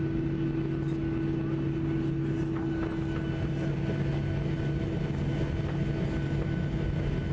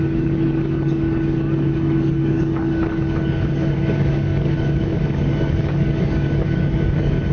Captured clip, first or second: first